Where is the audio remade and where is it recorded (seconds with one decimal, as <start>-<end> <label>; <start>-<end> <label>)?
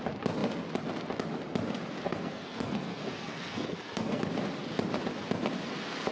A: 0.0-2.1 recorded; 2.1-4.3 remade; 4.3-6.1 recorded